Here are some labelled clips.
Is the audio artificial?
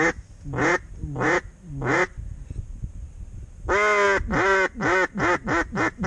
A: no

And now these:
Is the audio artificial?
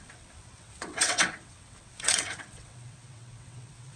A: yes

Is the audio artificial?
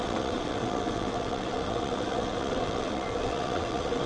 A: yes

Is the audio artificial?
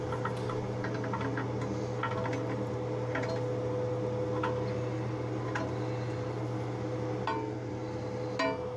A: no